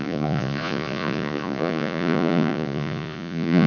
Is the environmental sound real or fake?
fake